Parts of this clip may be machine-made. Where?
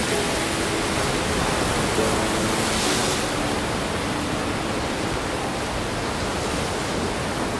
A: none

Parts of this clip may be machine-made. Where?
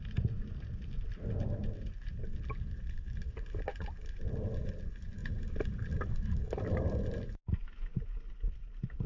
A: none